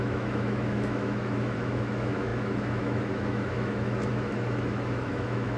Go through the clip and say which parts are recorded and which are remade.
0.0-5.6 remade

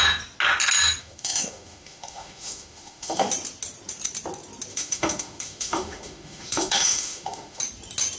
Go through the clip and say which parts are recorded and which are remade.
0.0-1.0 recorded; 1.0-3.3 remade; 3.3-4.7 recorded; 4.7-7.6 remade; 7.6-8.2 recorded

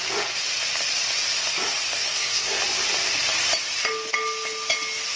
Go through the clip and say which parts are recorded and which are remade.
0.0-2.0 recorded; 2.0-2.6 remade; 2.6-5.2 recorded

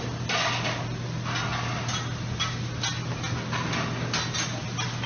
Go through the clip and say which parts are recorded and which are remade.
0.0-5.1 recorded